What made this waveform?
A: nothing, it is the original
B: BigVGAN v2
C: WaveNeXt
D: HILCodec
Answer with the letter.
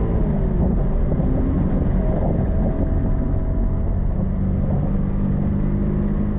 A